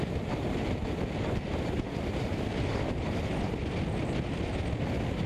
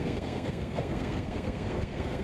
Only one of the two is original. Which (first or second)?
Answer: first